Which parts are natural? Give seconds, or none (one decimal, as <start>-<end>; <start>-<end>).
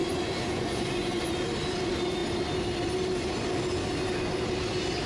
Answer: 1.2-5.1